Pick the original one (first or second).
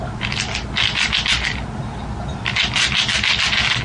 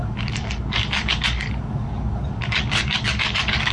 first